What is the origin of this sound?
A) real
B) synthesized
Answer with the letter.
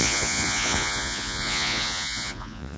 B